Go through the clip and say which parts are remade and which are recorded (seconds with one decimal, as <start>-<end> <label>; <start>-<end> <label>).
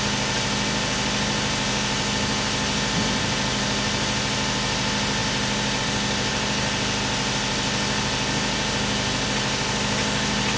0.0-10.6 recorded